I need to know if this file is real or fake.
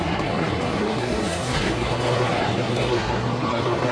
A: fake